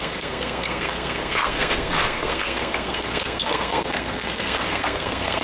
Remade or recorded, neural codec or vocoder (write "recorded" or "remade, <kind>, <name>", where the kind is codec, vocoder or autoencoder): remade, codec, SNAC